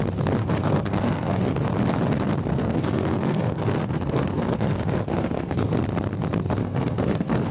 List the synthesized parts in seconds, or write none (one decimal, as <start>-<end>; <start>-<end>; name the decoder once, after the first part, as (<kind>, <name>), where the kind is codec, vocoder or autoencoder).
0.4-1.7 (codec, SNAC); 2.5-5.7; 6.6-7.5